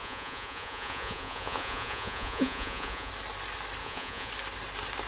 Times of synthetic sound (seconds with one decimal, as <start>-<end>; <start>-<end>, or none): 0.0-3.1; 3.8-4.3